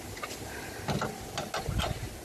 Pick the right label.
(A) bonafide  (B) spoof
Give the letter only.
A